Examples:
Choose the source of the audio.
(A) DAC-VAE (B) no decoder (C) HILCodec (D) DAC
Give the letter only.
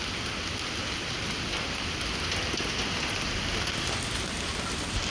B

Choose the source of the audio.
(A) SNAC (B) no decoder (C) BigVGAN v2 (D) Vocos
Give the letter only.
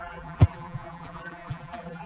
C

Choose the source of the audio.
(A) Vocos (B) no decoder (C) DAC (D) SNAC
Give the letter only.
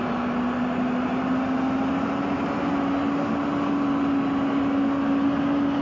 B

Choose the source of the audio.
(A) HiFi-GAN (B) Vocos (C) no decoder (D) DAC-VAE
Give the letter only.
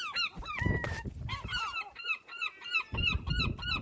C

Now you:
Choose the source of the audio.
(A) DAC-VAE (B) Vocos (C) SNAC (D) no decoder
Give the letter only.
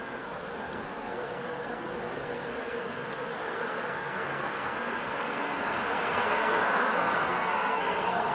C